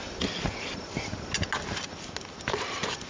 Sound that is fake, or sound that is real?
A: real